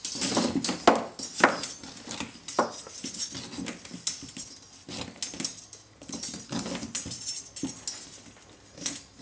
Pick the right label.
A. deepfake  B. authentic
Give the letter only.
B